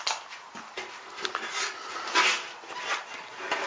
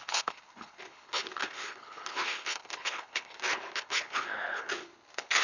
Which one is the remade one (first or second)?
second